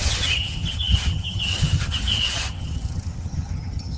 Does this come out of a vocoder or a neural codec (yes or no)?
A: yes